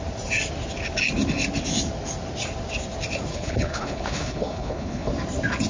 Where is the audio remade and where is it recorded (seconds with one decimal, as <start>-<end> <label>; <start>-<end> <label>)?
0.0-3.3 recorded; 3.3-5.1 remade; 5.1-5.7 recorded